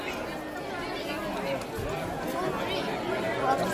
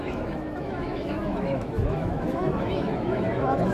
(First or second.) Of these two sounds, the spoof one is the second